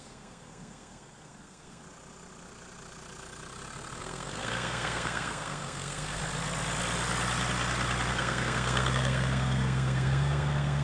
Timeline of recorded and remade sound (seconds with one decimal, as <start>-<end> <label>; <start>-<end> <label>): 0.0-1.8 remade; 1.8-4.0 recorded; 4.0-6.2 remade; 6.2-8.1 recorded; 8.1-10.8 remade